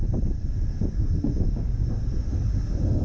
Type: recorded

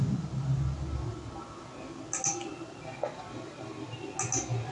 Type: recorded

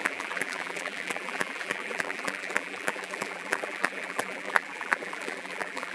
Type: remade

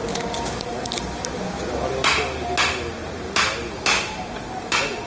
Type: recorded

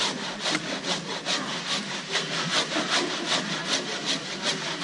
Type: recorded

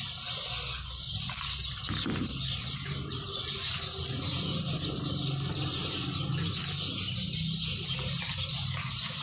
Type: recorded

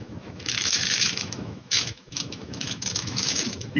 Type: remade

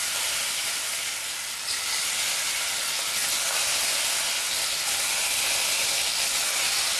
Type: recorded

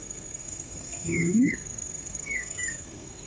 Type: remade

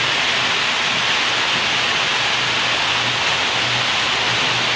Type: recorded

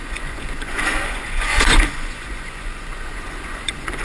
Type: remade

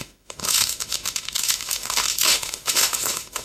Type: remade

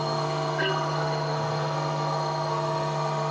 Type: remade